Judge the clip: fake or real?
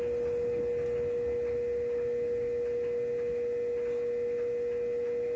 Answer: real